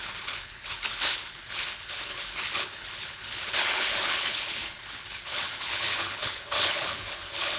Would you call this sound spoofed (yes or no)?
yes